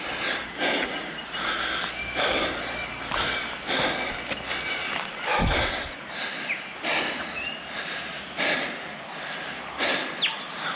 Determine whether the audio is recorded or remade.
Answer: recorded